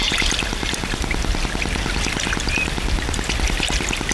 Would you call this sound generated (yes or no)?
no